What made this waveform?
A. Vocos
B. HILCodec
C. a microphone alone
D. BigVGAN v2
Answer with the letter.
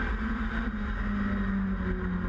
C